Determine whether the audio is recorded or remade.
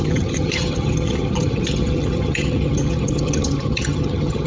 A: remade